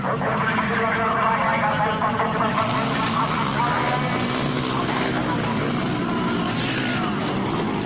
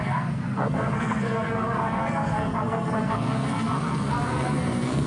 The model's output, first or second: second